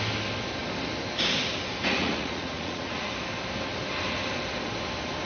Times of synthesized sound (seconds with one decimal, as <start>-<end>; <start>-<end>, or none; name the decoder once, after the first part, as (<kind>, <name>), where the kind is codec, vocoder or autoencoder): 2.0-3.1 (vocoder, Vocos)